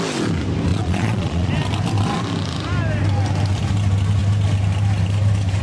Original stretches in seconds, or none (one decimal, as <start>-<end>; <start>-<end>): 0.0-0.7; 1.5-5.6